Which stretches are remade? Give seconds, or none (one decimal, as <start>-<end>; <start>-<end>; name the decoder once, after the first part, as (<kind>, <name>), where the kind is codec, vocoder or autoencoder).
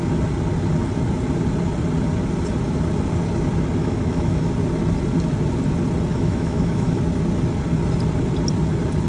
3.8-4.5 (autoencoder, DAC-VAE); 6.1-7.0